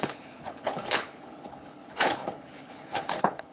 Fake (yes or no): yes